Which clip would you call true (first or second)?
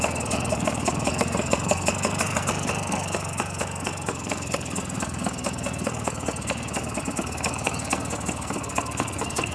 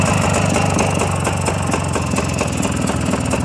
second